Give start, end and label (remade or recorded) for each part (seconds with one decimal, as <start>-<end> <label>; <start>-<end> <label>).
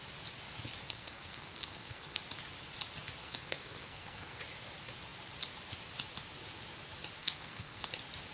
0.0-0.8 recorded; 0.8-2.2 remade; 2.2-3.2 recorded; 3.2-4.4 remade; 4.4-7.2 recorded; 7.2-7.9 remade; 7.9-8.3 recorded